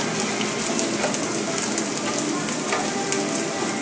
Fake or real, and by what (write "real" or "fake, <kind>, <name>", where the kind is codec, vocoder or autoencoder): real